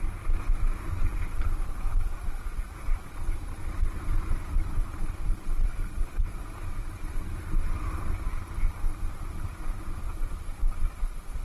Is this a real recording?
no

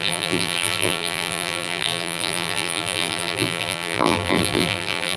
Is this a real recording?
no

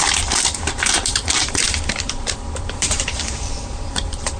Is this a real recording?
no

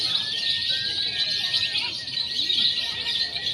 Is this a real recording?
yes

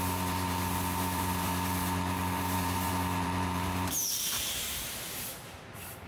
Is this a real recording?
no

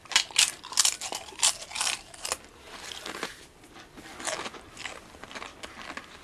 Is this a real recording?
yes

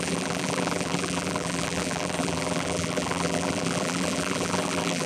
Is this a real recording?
no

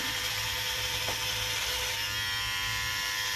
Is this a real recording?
no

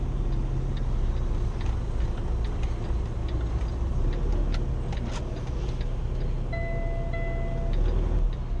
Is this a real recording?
yes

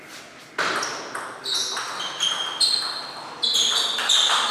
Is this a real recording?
yes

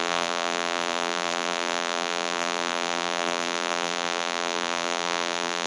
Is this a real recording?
no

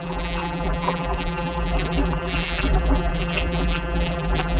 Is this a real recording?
no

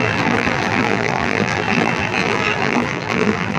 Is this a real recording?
no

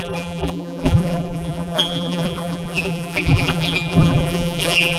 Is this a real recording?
no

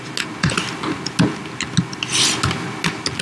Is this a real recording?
yes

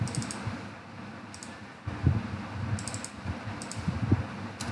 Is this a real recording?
yes